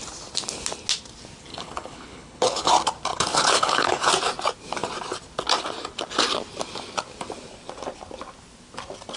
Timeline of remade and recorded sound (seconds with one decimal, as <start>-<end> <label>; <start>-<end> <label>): 0.0-1.5 recorded; 1.5-2.7 remade; 2.7-3.1 recorded; 3.1-4.1 remade; 4.1-9.2 recorded

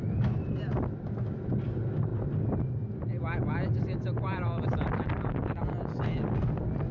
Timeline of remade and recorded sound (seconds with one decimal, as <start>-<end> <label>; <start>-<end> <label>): 0.0-6.9 recorded

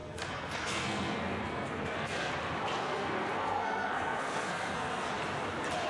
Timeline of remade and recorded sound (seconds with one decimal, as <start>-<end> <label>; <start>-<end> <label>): 0.0-2.3 remade; 2.3-2.8 recorded; 2.8-5.1 remade; 5.1-5.9 recorded

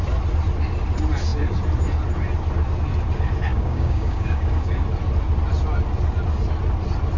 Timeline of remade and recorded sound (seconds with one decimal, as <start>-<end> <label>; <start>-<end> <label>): 0.0-3.5 recorded; 3.5-4.8 remade; 4.8-7.2 recorded

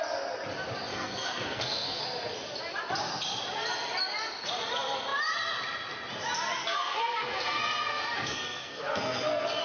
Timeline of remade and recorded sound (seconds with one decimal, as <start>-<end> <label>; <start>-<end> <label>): 0.0-0.9 recorded; 0.9-2.0 remade; 2.0-6.6 recorded; 6.6-9.6 remade

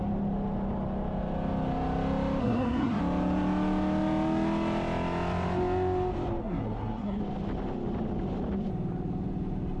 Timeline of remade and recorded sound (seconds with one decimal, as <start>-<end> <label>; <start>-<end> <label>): 0.0-2.4 recorded; 2.4-3.0 remade; 3.0-6.4 recorded; 6.4-7.2 remade; 7.2-9.8 recorded

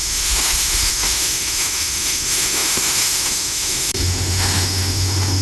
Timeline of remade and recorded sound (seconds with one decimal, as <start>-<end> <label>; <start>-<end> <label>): 0.0-5.4 remade

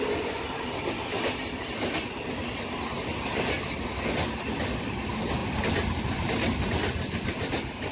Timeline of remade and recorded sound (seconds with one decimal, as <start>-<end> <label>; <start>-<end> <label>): 0.0-7.9 recorded